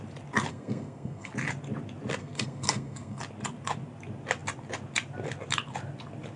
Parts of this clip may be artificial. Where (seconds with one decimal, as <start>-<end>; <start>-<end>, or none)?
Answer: 0.5-1.3; 2.2-3.2